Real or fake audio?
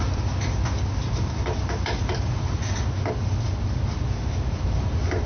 real